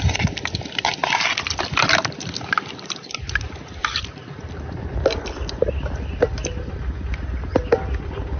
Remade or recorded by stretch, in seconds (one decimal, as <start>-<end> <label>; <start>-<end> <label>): 0.0-1.0 recorded; 1.0-1.6 remade; 1.6-3.8 recorded; 3.8-5.0 remade; 5.0-8.4 recorded